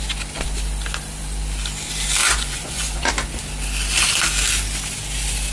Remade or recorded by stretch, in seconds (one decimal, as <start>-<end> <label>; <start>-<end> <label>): 0.0-2.2 recorded; 2.2-3.1 remade; 3.1-5.5 recorded